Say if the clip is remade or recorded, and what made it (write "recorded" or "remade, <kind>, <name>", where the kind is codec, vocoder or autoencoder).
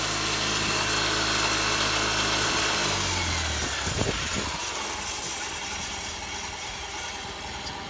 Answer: recorded